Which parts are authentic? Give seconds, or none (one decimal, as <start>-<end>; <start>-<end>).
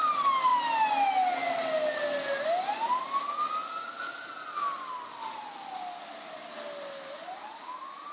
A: 0.0-8.1